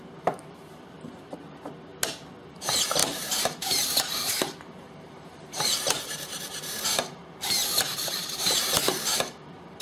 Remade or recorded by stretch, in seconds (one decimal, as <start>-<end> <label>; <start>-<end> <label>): 0.0-1.9 remade; 1.9-2.5 recorded; 2.5-7.2 remade; 7.2-7.9 recorded; 7.9-9.8 remade